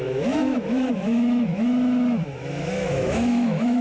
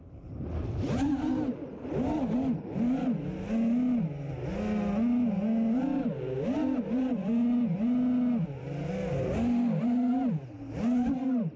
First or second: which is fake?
first